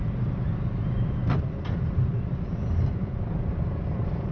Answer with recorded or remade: recorded